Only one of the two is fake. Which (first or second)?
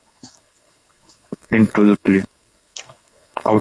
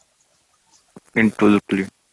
first